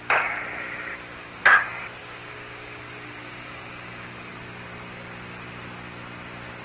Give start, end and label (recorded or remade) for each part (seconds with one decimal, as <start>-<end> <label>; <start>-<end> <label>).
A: 0.0-0.9 recorded; 0.9-1.4 remade; 1.4-2.0 recorded; 2.0-4.3 remade; 4.3-6.6 recorded